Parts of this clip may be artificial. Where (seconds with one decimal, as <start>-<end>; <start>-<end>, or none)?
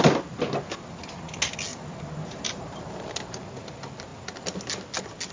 1.7-3.4